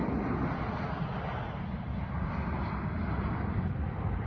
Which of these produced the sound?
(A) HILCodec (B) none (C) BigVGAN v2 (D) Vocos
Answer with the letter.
B